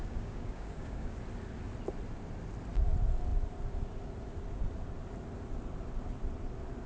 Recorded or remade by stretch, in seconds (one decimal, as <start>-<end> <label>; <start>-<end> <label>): 0.0-1.2 remade; 1.2-6.9 recorded